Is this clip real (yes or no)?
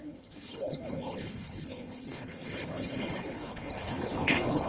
no